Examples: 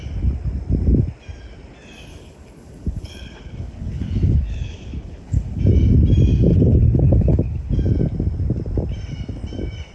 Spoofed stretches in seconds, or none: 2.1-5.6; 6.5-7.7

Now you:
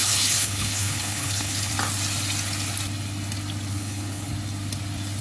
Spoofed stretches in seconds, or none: 0.0-1.7; 3.7-4.3

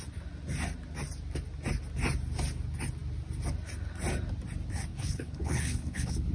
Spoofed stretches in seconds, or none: 4.9-6.3

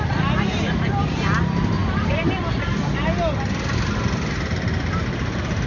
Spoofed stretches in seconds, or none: none